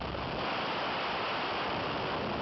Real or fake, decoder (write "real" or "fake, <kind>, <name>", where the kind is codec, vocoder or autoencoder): real